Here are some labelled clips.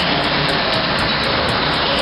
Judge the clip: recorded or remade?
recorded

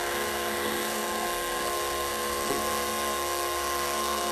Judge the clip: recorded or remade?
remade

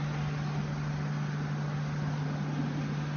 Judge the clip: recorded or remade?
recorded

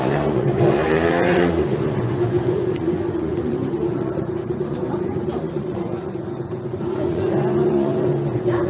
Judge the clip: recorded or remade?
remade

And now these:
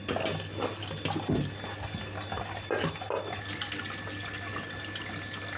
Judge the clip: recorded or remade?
recorded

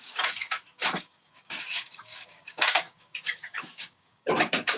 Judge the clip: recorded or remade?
remade